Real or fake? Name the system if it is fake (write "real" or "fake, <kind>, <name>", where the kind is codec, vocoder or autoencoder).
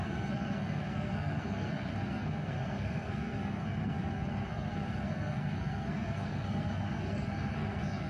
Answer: fake, codec, SNAC